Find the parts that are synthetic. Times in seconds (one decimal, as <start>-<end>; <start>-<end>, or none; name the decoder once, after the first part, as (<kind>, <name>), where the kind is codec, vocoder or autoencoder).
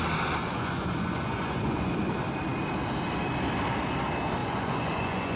0.4-1.9 (vocoder, Vocos); 4.4-5.4